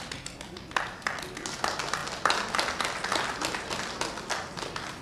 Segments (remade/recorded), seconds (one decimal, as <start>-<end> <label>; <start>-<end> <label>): 0.0-5.0 recorded